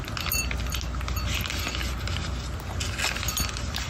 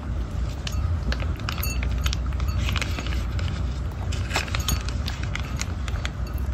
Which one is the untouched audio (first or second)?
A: first